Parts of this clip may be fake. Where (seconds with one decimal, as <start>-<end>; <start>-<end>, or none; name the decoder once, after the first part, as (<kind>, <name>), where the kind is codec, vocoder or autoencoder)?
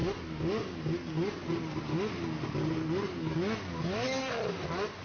none